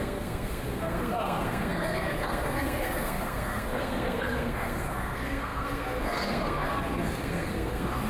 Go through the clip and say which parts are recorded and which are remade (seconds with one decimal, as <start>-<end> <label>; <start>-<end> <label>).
0.0-8.1 remade